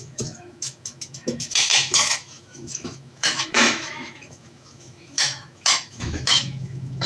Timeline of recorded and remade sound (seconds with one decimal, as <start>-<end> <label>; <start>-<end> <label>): 0.0-7.1 remade